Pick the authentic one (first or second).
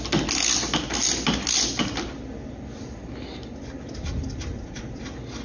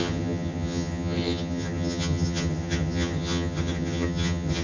first